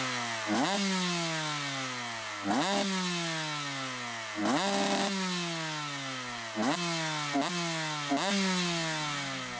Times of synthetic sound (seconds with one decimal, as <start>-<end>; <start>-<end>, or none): none